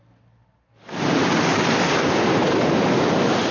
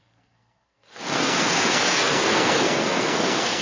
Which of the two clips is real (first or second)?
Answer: first